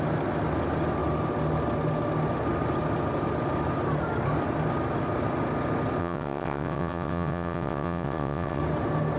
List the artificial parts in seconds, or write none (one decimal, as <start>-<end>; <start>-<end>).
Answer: 6.0-8.6